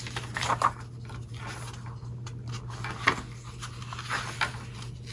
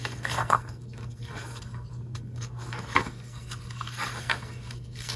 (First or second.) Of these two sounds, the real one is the first